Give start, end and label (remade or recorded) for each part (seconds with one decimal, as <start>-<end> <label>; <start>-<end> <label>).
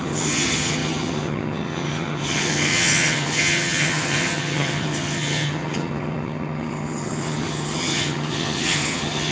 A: 0.0-9.3 remade